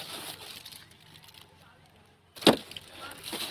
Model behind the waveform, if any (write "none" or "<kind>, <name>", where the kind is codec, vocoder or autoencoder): none